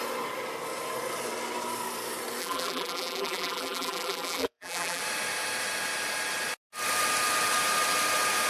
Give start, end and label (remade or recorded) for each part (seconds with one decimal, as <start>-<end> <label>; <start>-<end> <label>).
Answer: 0.0-2.4 recorded; 2.4-5.0 remade; 5.0-8.5 recorded